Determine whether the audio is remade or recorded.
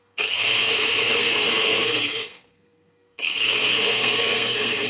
remade